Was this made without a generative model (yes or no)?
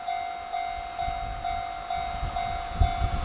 yes